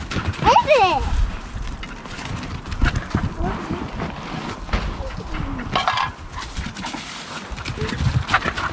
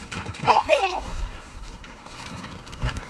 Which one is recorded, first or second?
first